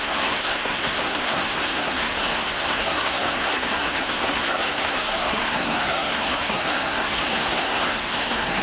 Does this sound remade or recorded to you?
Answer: remade